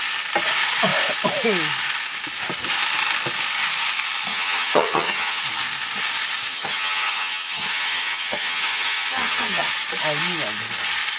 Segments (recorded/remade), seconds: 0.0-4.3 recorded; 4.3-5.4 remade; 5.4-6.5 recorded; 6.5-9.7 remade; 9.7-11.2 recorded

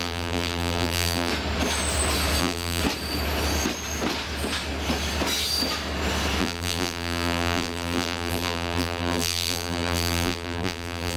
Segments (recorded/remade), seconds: 0.0-1.3 remade; 1.3-2.4 recorded; 2.4-2.8 remade; 2.8-6.4 recorded; 6.4-11.2 remade

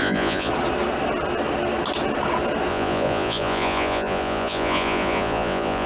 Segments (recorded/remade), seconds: 0.0-0.5 remade; 0.5-2.7 recorded; 2.7-5.9 remade

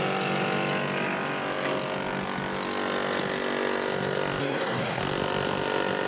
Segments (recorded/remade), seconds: 0.0-4.4 recorded; 4.4-5.0 remade; 5.0-6.1 recorded

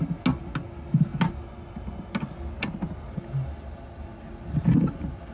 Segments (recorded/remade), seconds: 0.0-5.3 recorded

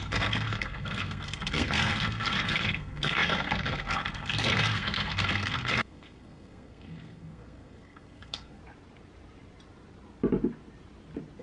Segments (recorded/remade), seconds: 0.0-8.6 remade; 8.6-11.4 recorded

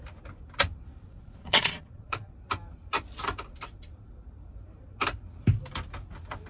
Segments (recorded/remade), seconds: 0.0-1.0 recorded; 1.0-2.3 remade; 2.3-6.5 recorded